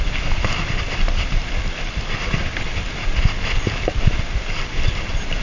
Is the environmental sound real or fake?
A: real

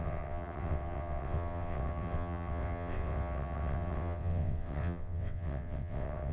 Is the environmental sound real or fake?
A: fake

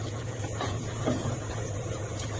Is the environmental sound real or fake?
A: fake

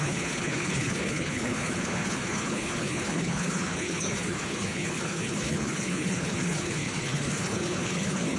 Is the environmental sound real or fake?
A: fake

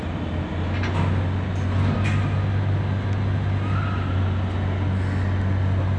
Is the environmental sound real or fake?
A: real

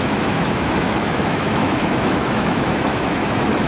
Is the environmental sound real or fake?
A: fake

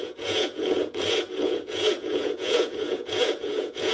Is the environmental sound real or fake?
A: fake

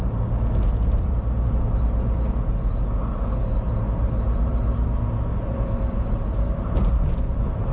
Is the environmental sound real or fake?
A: real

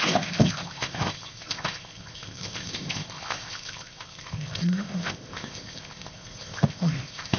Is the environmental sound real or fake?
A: fake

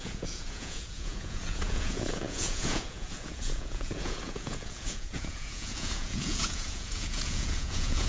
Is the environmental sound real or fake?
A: fake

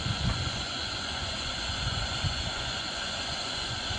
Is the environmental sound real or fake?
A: fake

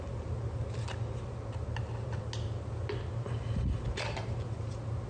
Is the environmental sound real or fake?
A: real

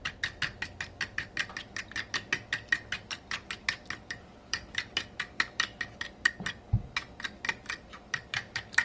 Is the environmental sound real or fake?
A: fake